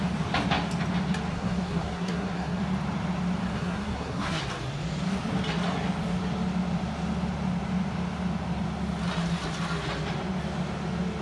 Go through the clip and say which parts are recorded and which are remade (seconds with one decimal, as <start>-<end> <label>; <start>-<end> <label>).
0.0-1.3 recorded; 1.3-2.6 remade; 2.6-3.4 recorded; 3.4-4.4 remade; 4.4-11.2 recorded